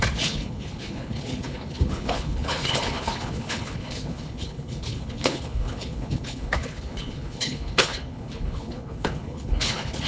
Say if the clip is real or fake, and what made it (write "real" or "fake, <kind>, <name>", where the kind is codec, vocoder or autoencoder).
fake, codec, HILCodec